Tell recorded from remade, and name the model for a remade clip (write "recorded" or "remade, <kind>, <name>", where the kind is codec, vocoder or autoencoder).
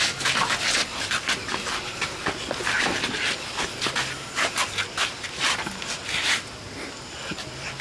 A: recorded